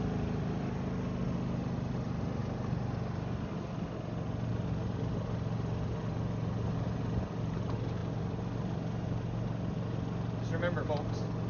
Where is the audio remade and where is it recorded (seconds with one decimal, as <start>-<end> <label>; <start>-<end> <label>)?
0.0-11.5 recorded